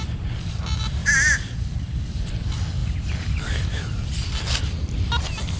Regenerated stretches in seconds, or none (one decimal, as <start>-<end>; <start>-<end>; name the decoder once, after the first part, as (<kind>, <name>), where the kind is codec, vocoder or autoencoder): 1.0-2.3 (vocoder, BigVGAN v2)